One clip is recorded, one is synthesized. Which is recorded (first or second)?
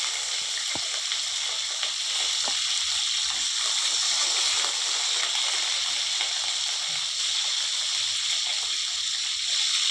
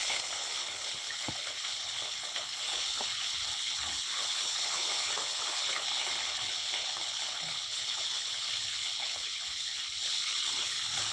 first